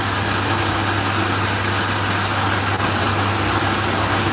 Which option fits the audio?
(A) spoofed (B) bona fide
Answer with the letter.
B